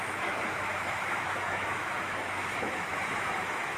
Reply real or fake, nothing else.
fake